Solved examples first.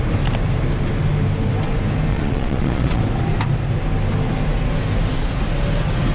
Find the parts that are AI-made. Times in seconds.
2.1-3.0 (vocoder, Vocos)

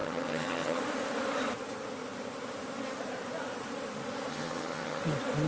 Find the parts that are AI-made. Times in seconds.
0.0-0.8 (vocoder, HiFi-GAN); 4.3-5.0

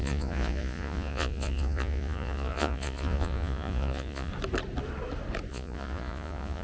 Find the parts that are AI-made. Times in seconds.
0.0-4.3 (vocoder, Vocos); 5.5-6.6

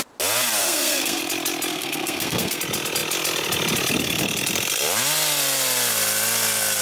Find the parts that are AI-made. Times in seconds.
0.6-1.2 (codec, SNAC); 1.7-2.6

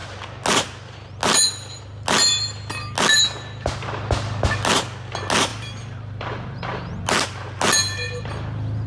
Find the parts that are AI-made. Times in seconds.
5.5-6.9 (vocoder, BigVGAN v2)

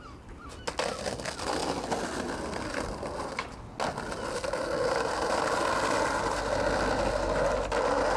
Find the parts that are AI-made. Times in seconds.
none

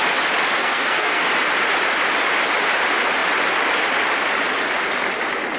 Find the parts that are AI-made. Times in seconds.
0.6-1.2 (codec, SNAC)